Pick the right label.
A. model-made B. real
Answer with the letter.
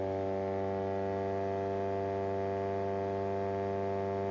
B